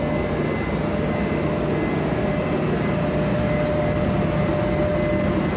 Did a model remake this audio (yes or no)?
no